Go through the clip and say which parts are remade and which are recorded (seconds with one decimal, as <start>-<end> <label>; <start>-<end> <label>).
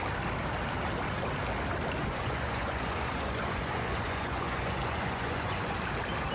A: 0.0-2.0 recorded; 2.0-5.7 remade; 5.7-6.3 recorded